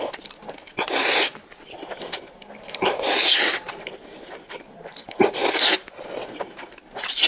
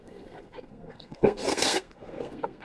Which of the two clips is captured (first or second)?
first